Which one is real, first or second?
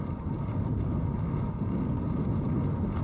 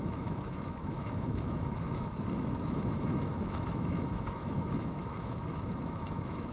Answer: first